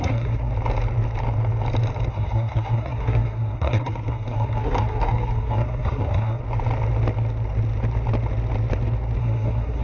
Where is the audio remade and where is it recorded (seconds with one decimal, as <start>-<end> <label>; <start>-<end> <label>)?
0.0-0.5 remade; 0.5-2.1 recorded; 2.1-6.4 remade; 6.4-9.2 recorded; 9.2-9.8 remade